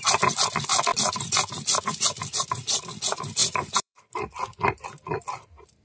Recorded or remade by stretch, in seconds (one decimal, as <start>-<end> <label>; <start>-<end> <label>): 0.0-3.4 recorded; 3.4-4.0 remade; 4.0-5.8 recorded